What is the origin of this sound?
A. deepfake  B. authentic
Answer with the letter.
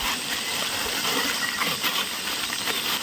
B